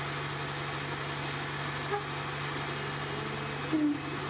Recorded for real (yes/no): yes